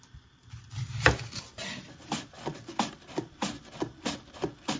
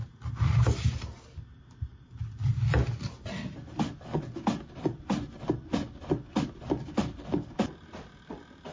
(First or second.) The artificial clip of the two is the first